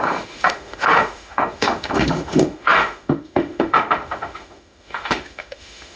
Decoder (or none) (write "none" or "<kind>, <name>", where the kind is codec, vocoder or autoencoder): autoencoder, DAC-VAE